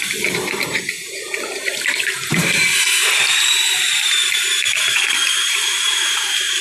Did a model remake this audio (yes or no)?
yes